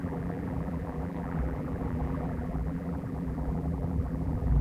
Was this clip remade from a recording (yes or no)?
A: yes